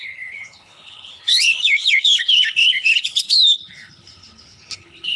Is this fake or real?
fake